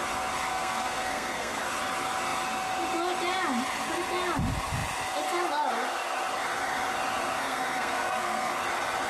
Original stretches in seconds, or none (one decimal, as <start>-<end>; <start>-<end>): 0.0-0.5; 1.6-7.3; 8.5-9.1